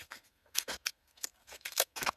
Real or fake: fake